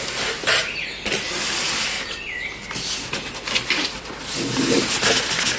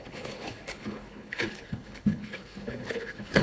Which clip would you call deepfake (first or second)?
second